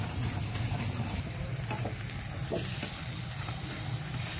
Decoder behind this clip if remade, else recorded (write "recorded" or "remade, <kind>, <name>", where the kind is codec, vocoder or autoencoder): recorded